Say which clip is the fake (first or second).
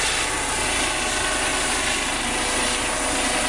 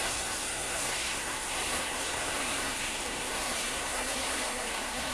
second